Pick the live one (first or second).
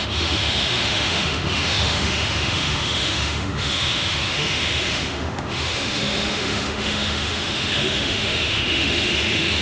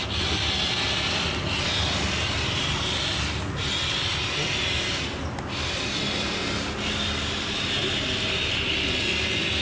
second